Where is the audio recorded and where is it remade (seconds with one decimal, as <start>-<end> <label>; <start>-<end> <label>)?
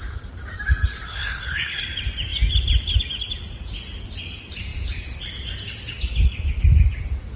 0.0-1.1 recorded; 1.1-1.8 remade; 1.8-7.4 recorded